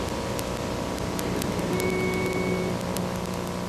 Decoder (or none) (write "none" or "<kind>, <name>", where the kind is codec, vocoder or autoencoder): none